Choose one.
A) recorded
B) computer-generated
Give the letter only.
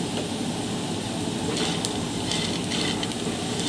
A